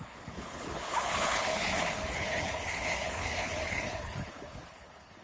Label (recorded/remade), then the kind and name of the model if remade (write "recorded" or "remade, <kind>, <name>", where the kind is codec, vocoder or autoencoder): remade, codec, HILCodec